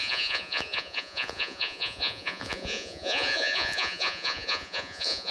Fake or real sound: fake